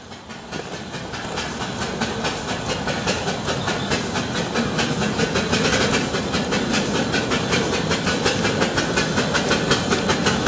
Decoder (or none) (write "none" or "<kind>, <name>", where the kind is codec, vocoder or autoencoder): none